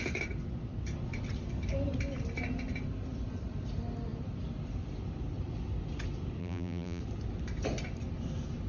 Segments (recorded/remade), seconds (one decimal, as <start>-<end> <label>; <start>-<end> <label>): 0.0-6.4 recorded; 6.4-7.0 remade; 7.0-8.7 recorded